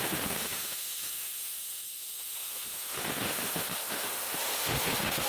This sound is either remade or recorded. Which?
remade